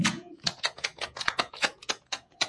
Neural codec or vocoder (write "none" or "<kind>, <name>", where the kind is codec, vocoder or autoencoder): vocoder, Vocos